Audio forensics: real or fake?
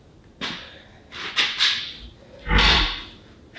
real